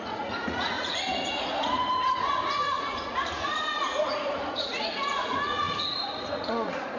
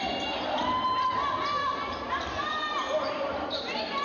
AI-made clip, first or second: first